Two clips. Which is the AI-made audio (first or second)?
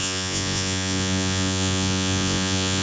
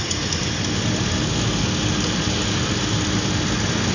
first